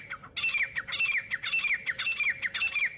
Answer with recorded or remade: recorded